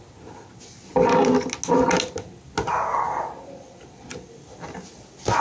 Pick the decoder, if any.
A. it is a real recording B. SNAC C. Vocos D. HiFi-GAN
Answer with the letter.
A